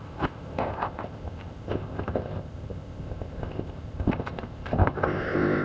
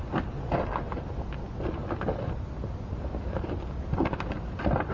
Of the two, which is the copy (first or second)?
first